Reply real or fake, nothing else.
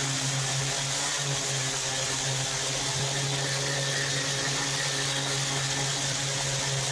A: real